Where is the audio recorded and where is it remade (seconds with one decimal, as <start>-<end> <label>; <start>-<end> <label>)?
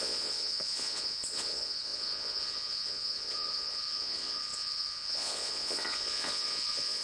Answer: 0.0-7.0 remade